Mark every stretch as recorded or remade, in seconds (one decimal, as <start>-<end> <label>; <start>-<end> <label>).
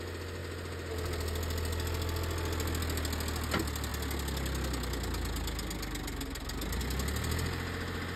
0.0-8.2 recorded